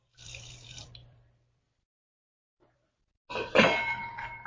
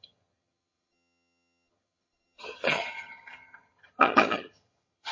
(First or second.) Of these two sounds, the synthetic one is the second